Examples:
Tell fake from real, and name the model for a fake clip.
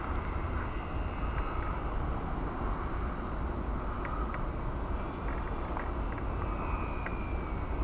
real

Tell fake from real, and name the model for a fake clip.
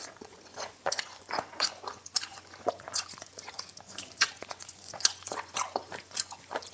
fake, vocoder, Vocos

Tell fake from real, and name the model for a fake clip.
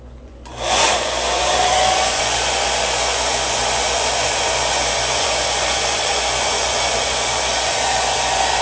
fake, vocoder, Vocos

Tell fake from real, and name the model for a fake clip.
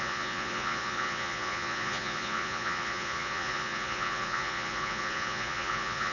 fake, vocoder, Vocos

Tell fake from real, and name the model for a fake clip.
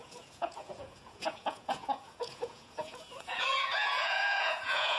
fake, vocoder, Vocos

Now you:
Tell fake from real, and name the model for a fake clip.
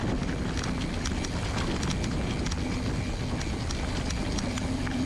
real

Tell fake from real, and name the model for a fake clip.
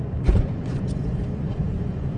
fake, vocoder, Vocos